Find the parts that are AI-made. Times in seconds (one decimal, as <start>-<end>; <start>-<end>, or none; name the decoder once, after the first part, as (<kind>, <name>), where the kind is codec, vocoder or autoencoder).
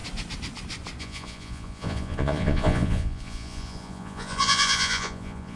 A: 1.0-5.6 (vocoder, Vocos)